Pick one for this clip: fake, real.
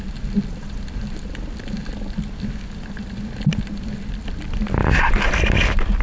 real